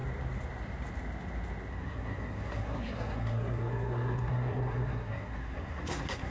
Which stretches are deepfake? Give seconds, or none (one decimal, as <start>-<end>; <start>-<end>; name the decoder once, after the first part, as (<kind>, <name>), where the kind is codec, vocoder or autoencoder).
1.7-6.3 (codec, SNAC)